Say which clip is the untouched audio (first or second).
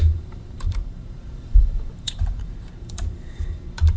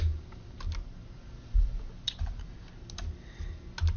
second